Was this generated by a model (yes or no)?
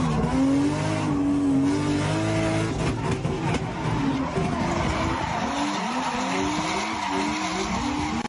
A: no